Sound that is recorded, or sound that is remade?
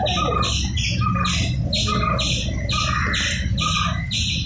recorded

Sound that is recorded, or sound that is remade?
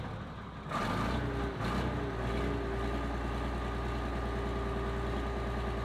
recorded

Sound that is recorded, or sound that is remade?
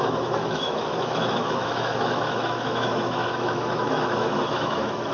remade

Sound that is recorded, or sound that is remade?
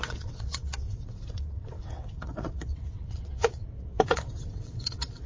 remade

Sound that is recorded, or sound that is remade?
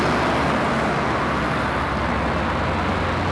recorded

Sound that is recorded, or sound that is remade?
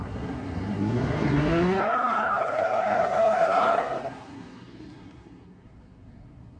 remade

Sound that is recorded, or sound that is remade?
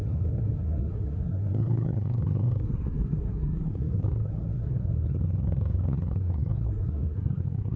remade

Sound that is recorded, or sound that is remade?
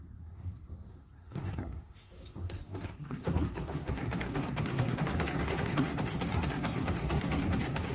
remade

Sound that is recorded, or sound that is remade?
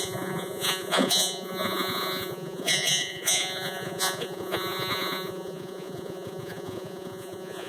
remade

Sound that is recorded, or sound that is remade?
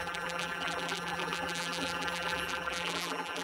remade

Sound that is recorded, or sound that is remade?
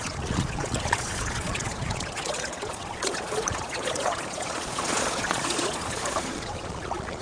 remade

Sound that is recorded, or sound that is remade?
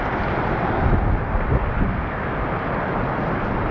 recorded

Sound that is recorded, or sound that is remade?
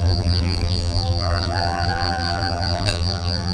remade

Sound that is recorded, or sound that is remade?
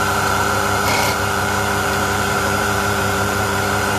remade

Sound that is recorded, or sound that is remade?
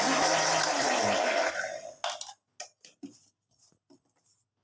recorded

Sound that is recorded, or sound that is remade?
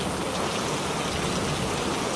recorded